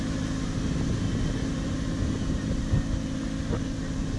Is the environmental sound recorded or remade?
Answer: recorded